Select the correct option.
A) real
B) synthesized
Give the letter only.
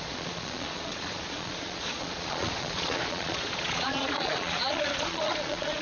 B